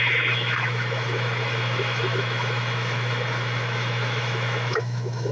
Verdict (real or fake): fake